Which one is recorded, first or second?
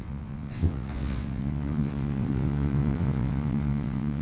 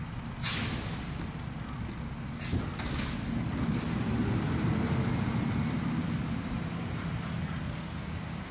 second